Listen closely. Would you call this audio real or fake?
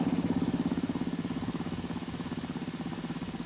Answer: fake